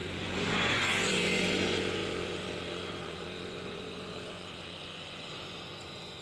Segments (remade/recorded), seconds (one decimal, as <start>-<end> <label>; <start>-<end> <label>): 0.0-6.2 remade